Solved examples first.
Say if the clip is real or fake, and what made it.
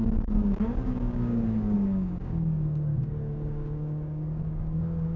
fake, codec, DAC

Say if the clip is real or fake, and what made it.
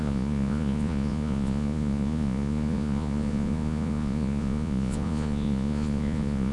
fake, vocoder, Vocos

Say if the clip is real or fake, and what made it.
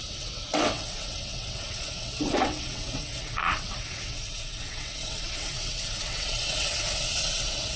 fake, vocoder, WaveNeXt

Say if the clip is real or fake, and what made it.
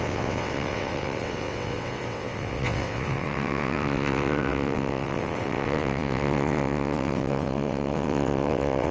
fake, vocoder, WaveNeXt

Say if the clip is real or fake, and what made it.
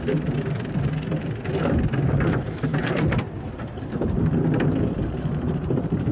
real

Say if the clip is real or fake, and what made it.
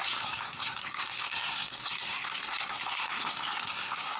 fake, codec, SNAC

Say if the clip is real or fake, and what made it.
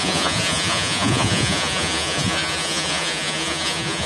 fake, vocoder, Vocos